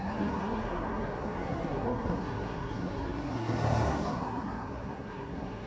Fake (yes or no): yes